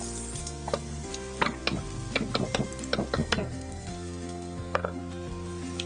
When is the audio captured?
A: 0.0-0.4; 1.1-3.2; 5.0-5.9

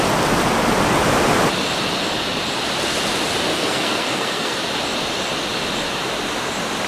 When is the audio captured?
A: 0.0-3.5; 4.6-6.9